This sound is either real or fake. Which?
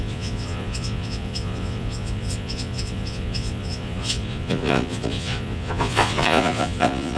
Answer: fake